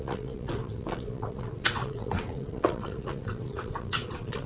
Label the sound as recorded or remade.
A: remade